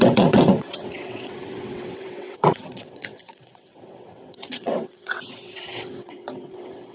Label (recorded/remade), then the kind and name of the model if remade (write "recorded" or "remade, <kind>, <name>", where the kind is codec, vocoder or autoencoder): remade, vocoder, WaveNeXt